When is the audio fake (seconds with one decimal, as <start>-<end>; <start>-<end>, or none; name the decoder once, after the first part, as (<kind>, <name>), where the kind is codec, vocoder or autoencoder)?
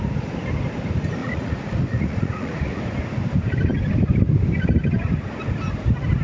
1.2-2.8 (vocoder, Vocos)